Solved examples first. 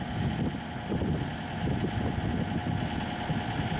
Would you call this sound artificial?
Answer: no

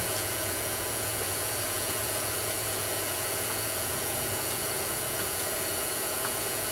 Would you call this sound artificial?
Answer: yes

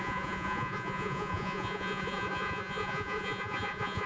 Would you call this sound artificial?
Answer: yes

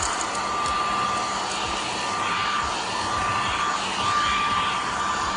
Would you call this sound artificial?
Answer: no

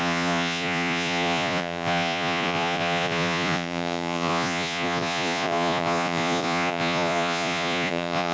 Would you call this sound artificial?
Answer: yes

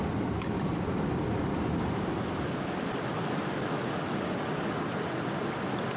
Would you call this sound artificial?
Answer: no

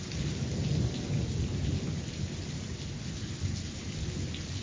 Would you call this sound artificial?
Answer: no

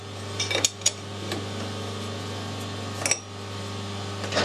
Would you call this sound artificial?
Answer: no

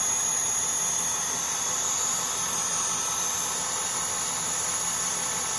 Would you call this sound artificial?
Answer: no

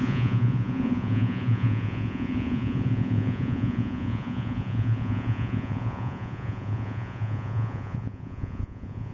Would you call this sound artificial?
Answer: yes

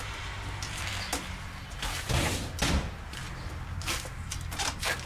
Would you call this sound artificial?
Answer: no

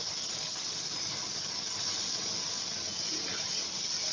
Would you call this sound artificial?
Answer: no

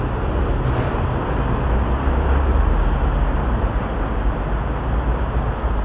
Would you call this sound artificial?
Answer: no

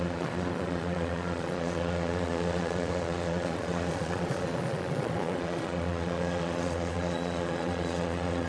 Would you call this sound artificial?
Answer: yes